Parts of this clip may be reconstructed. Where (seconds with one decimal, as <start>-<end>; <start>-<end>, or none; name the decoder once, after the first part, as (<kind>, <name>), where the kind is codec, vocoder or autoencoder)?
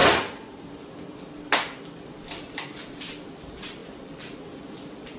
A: none